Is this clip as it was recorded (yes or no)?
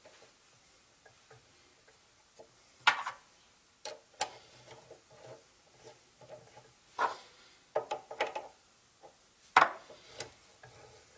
yes